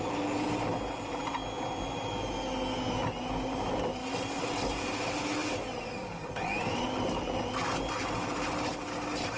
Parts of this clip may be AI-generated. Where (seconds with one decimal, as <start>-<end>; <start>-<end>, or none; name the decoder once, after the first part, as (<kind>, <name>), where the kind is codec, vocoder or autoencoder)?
none